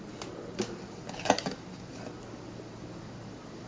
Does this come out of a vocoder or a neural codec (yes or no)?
no